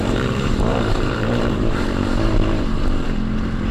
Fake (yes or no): yes